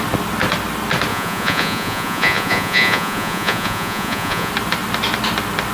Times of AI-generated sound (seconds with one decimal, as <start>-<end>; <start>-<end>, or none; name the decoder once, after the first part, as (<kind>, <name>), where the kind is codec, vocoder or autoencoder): 1.1-4.5 (vocoder, Vocos)